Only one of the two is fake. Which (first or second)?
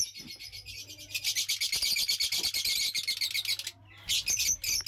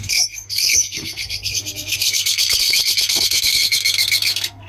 second